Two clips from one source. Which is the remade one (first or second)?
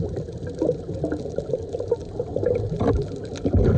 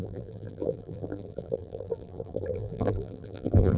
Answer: second